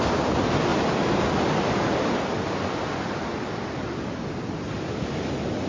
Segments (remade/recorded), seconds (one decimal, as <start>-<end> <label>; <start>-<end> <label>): 0.0-5.7 recorded